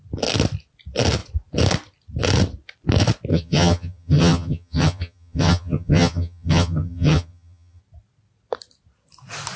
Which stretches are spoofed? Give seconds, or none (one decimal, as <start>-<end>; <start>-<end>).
3.3-7.8